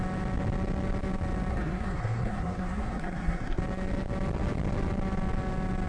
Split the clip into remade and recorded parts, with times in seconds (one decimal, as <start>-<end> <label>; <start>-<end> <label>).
0.0-1.5 recorded; 1.5-3.6 remade; 3.6-5.9 recorded